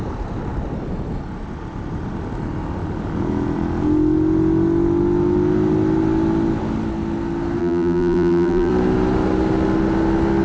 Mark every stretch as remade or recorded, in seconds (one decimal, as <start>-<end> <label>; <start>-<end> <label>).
0.0-7.6 recorded; 7.6-8.7 remade; 8.7-10.4 recorded